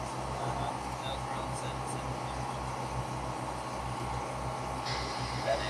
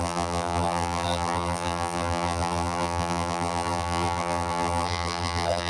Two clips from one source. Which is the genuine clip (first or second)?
first